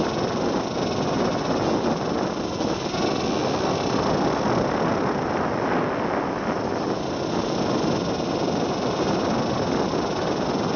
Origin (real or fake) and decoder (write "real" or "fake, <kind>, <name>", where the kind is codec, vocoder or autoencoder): real